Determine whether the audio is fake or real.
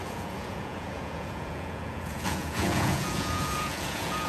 fake